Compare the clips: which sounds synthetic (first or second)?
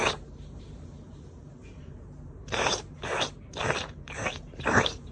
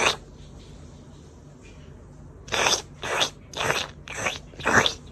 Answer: first